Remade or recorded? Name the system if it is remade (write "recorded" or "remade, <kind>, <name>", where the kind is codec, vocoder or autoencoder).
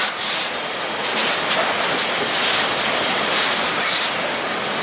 recorded